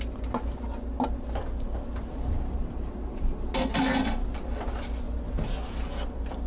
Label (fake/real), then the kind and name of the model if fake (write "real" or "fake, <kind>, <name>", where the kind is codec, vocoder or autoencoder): real